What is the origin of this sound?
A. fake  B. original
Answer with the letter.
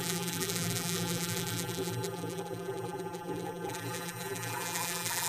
A